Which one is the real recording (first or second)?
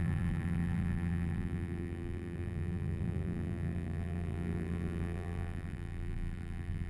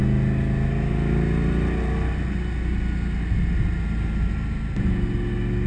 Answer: second